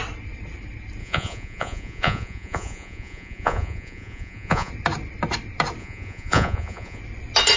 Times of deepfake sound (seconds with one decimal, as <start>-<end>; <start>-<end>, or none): 1.0-4.7; 5.8-7.0